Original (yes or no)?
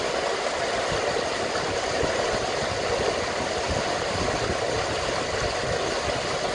yes